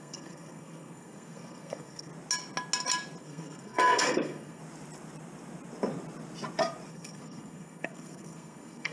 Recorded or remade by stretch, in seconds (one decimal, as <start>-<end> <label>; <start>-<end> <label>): 0.0-2.1 remade; 2.1-3.2 recorded; 3.2-4.6 remade; 4.6-6.9 recorded; 6.9-8.9 remade